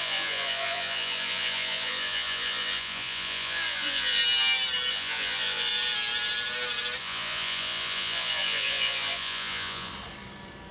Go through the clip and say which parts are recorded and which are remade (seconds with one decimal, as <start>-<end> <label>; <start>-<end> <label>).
0.0-4.2 remade; 4.2-4.9 recorded; 4.9-5.7 remade; 5.7-7.0 recorded; 7.0-9.9 remade; 9.9-10.7 recorded